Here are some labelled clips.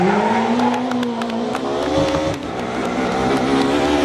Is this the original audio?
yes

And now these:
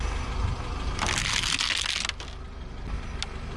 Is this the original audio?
yes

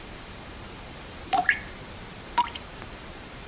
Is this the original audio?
no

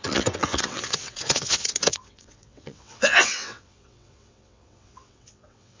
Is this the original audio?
no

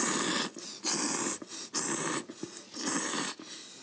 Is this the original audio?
yes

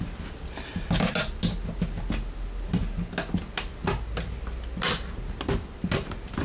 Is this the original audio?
yes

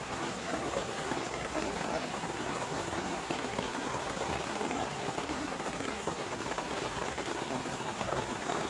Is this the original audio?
no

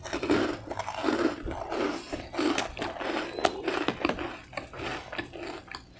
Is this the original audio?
yes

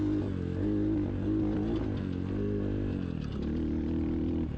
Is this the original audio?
yes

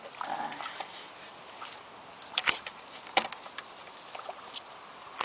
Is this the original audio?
yes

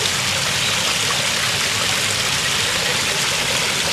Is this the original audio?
yes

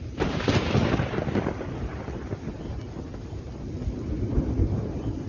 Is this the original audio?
yes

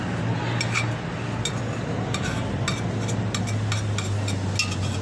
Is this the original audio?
yes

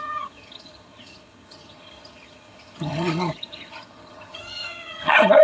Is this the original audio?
no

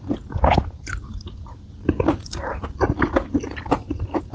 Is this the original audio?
yes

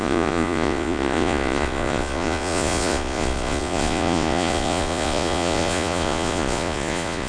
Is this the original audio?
no